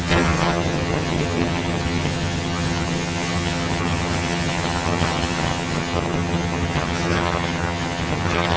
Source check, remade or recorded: remade